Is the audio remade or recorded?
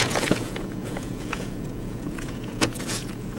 remade